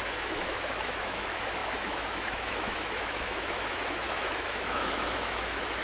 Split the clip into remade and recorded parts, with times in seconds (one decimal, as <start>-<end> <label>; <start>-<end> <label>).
0.0-5.8 remade